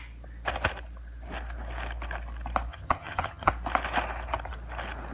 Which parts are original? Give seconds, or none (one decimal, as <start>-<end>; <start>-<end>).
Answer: 0.0-2.7; 3.5-5.1